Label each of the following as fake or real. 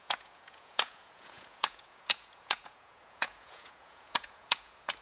fake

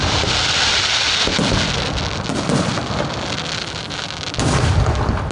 real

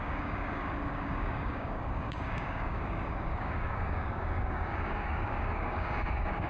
fake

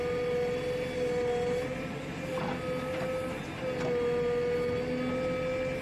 real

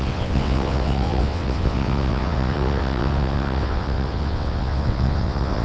fake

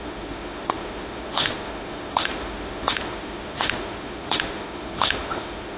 fake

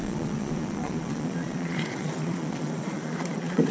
fake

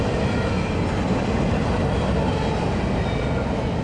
real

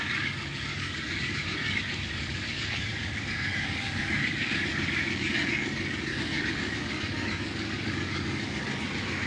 fake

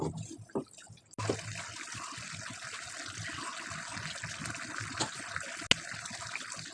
real